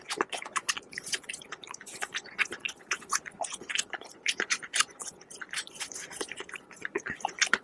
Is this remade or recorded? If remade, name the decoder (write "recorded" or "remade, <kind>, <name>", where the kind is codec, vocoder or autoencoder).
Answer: remade, vocoder, Vocos